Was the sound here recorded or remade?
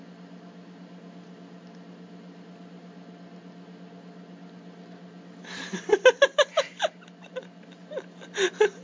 recorded